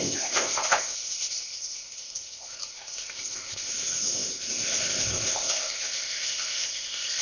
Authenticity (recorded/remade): remade